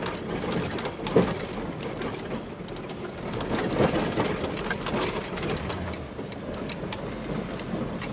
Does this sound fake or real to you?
real